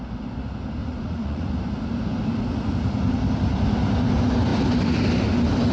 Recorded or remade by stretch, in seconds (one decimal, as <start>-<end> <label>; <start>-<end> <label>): 0.0-0.8 recorded; 0.8-1.5 remade; 1.5-5.7 recorded